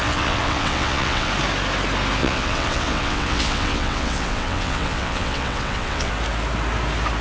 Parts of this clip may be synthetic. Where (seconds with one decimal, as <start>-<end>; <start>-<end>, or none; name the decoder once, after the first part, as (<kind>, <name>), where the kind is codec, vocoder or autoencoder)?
0.0-1.3 (vocoder, WaveNeXt); 2.2-6.1